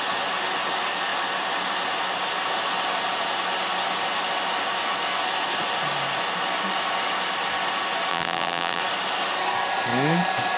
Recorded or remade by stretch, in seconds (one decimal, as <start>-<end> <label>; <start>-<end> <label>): 0.0-8.1 recorded; 8.1-8.8 remade; 8.8-10.6 recorded